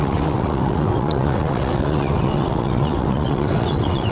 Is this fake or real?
fake